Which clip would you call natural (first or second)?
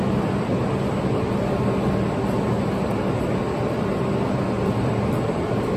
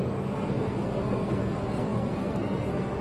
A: first